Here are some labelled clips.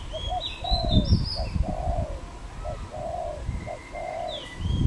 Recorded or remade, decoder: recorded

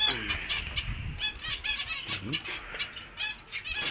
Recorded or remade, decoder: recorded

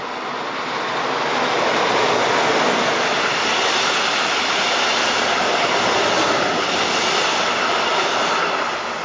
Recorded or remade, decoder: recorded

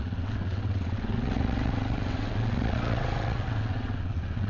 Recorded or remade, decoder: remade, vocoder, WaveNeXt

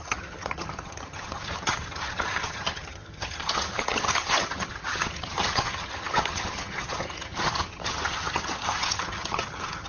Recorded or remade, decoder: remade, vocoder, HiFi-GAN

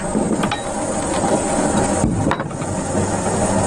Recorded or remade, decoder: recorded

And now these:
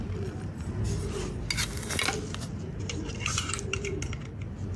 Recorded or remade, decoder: recorded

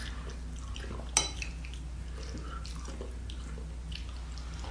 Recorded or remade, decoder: recorded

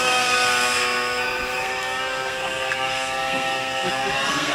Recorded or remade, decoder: remade, codec, SNAC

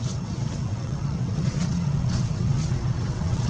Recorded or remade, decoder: remade, vocoder, WaveNeXt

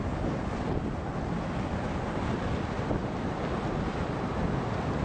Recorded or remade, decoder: recorded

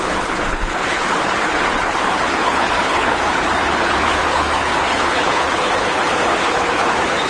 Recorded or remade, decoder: remade, codec, HILCodec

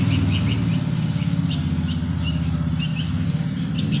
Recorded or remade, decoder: recorded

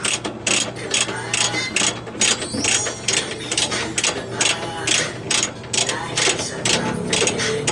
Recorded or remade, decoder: recorded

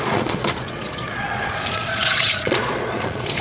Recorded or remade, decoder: remade, vocoder, Vocos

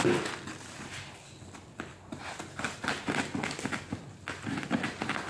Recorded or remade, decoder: recorded